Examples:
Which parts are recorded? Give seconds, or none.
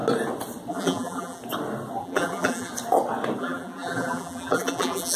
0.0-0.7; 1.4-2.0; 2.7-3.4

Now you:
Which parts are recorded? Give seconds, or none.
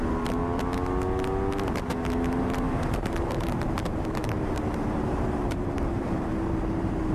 0.4-2.4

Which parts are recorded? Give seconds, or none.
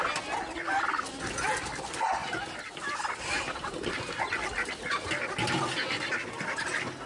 0.0-2.2; 4.7-7.1